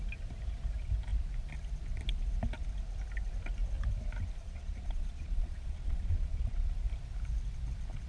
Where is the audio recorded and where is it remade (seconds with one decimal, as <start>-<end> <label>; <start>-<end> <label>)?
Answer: 0.0-4.4 recorded; 4.4-6.7 remade; 6.7-8.1 recorded